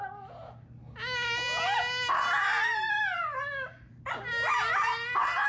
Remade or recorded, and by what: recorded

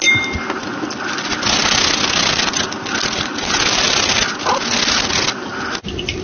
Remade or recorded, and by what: recorded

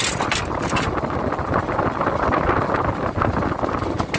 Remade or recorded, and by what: recorded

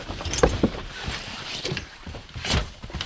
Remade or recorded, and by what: remade, vocoder, BigVGAN v2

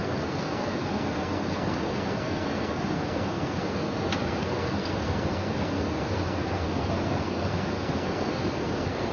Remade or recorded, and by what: remade, codec, SNAC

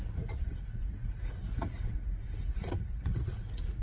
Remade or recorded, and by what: remade, vocoder, Vocos